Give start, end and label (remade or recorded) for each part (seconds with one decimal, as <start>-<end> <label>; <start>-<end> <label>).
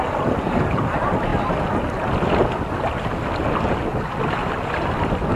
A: 0.0-5.4 recorded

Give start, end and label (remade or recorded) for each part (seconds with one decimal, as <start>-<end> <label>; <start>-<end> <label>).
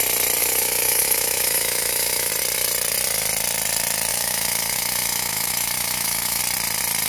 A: 0.0-0.4 recorded; 0.4-2.3 remade; 2.3-4.1 recorded; 4.1-6.4 remade; 6.4-7.1 recorded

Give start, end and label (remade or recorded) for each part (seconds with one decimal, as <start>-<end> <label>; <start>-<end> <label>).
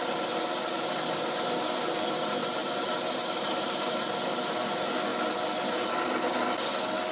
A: 0.0-2.4 recorded; 2.4-3.9 remade; 3.9-7.1 recorded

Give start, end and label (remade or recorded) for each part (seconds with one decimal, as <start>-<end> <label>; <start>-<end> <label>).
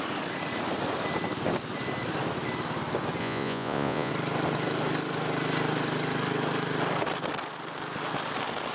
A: 0.0-3.2 recorded; 3.2-4.1 remade; 4.1-8.7 recorded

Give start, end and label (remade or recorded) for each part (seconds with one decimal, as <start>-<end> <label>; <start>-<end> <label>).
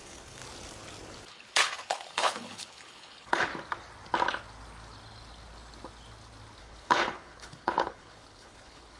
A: 0.0-0.4 remade; 0.4-1.3 recorded; 1.3-3.5 remade; 3.5-6.6 recorded; 6.6-9.0 remade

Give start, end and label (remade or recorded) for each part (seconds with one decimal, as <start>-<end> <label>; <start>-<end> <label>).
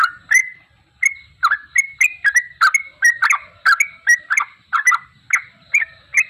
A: 0.0-6.3 recorded